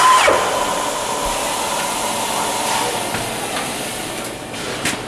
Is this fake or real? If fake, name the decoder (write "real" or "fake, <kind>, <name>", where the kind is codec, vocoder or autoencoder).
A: fake, vocoder, BigVGAN v2